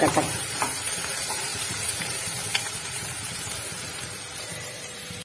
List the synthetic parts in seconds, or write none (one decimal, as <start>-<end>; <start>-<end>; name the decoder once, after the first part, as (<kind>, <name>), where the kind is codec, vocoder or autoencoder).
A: 0.0-5.2 (vocoder, BigVGAN v2)